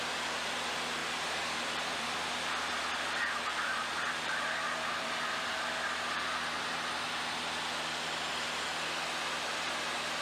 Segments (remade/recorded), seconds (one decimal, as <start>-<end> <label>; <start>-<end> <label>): 0.0-1.0 recorded; 1.0-5.7 remade; 5.7-10.2 recorded